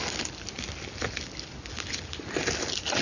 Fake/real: real